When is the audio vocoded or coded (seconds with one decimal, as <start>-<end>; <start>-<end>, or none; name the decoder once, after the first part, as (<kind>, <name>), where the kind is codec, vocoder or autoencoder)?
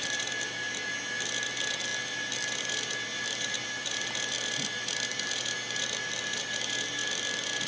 none